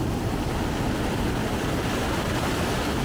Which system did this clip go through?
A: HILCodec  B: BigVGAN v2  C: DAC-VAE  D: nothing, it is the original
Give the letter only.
D